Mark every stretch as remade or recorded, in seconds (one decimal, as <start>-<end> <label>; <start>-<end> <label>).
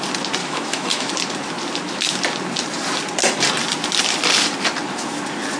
0.0-0.4 recorded; 0.4-1.1 remade; 1.1-5.6 recorded